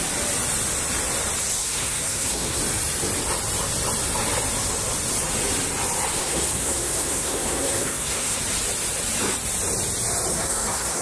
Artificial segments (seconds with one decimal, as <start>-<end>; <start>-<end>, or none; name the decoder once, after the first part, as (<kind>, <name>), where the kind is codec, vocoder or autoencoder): 1.6-2.6 (codec, SNAC); 6.2-8.4; 10.3-11.0